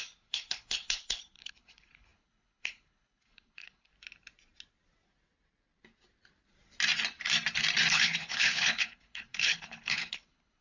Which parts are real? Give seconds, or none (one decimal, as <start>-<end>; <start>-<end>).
3.9-7.9